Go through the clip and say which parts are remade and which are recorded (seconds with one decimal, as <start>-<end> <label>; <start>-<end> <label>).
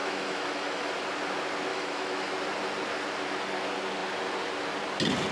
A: 0.0-0.9 remade; 0.9-1.7 recorded; 1.7-2.3 remade; 2.3-5.3 recorded